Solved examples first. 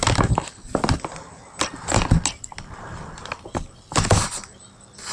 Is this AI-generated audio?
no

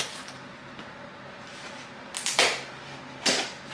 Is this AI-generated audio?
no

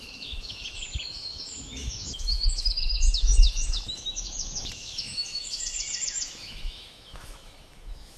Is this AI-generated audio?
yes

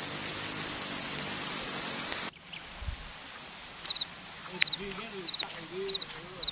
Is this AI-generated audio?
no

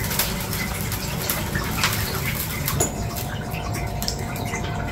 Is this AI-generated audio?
no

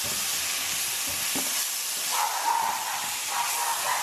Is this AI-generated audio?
no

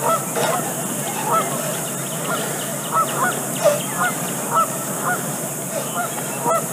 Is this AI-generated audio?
no